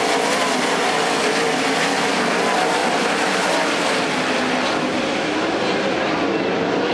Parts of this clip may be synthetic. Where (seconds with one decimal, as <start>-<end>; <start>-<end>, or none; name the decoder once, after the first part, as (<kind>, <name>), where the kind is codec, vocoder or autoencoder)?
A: 2.8-6.9 (vocoder, BigVGAN v2)